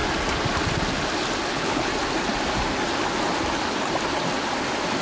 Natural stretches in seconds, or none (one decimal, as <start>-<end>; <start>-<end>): 0.0-1.5; 1.9-5.0